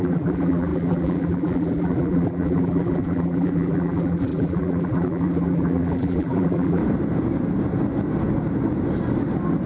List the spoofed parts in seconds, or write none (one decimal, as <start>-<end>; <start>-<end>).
0.0-6.8